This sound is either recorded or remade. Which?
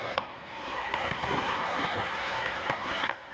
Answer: remade